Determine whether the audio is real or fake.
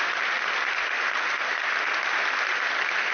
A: real